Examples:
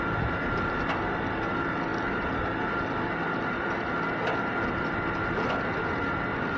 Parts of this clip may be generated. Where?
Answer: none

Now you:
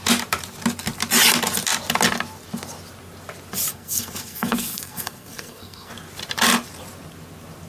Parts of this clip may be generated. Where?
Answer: 3.7-5.9 (codec, SNAC)

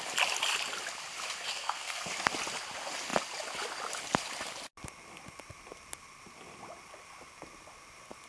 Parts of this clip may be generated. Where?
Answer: 1.5-2.1 (codec, SNAC)

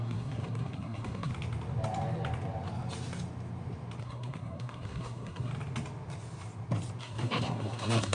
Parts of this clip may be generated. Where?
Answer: 0.0-1.3 (codec, SNAC); 4.0-5.5; 7.0-8.1

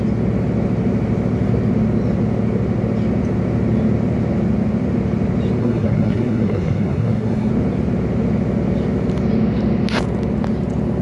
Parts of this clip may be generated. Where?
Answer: 5.6-7.5 (codec, SNAC)

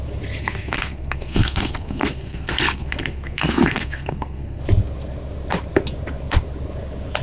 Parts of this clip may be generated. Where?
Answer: 0.4-4.6 (codec, SNAC)

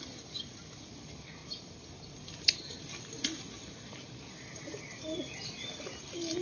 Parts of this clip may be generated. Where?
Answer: none

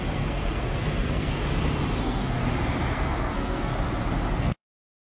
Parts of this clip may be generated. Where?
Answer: 0.0-1.4 (codec, SNAC); 2.0-2.4; 2.9-3.7; 4.4-5.1